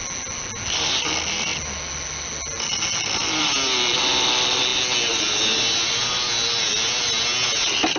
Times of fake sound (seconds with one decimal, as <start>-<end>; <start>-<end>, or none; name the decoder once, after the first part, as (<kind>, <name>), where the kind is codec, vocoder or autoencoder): none